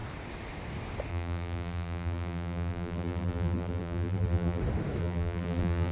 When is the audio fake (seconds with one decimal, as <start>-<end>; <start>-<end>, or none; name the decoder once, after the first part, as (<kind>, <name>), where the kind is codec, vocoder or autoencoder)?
1.1-4.6 (vocoder, BigVGAN v2); 5.0-5.9

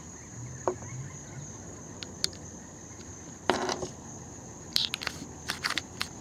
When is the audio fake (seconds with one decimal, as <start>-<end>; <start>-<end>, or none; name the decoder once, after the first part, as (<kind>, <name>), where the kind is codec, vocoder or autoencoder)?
0.0-1.0 (vocoder, BigVGAN v2); 3.6-4.8; 5.5-6.2

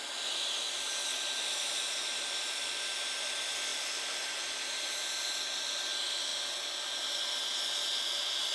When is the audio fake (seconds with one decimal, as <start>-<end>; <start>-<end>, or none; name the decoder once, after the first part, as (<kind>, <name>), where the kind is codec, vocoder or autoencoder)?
2.1-2.7 (vocoder, BigVGAN v2)

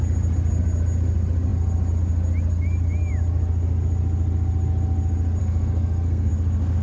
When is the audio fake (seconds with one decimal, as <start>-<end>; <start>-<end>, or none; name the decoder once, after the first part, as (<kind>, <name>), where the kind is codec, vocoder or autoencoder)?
5.4-6.3 (codec, SNAC)

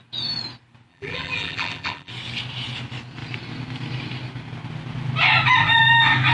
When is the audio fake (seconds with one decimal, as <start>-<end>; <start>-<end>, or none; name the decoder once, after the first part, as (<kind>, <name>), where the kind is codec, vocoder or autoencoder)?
0.9-2.1 (vocoder, BigVGAN v2)